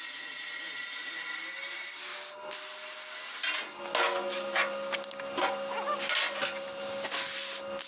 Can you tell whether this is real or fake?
real